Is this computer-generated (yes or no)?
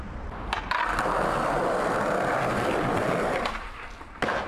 no